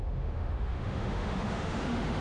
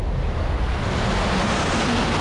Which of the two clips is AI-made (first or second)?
first